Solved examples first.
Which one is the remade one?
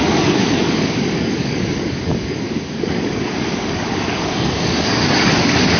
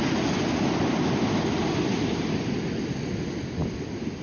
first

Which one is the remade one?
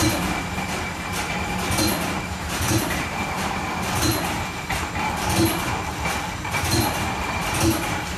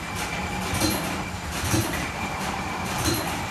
second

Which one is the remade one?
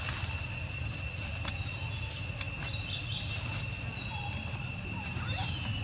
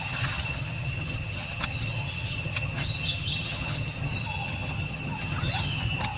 second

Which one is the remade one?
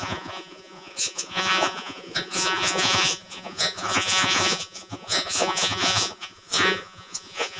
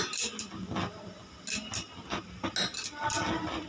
first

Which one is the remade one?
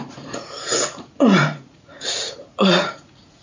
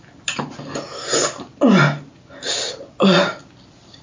first